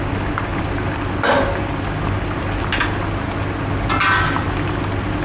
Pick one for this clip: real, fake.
real